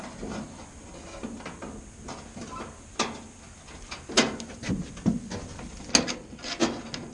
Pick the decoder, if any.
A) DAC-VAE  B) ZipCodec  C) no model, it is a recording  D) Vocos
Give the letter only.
C